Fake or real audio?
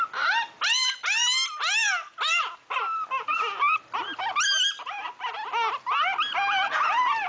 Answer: real